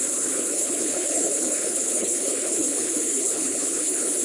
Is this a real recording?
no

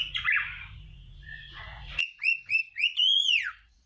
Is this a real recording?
no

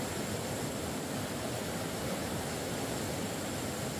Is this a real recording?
yes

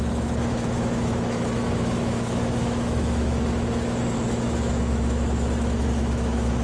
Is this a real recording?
no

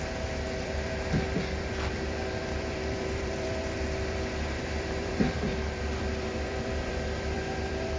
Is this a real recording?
no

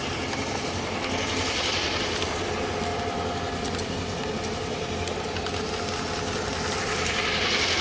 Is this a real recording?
yes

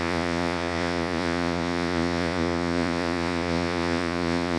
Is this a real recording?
no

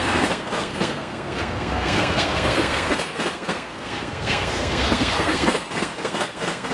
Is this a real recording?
no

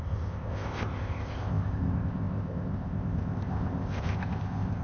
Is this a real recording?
no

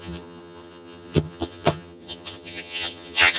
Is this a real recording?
no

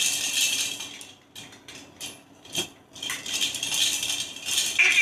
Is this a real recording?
yes